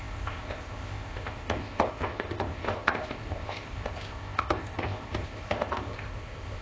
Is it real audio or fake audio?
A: fake